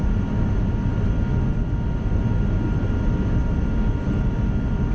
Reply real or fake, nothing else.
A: real